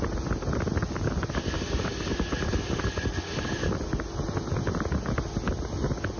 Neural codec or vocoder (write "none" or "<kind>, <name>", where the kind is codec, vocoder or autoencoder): none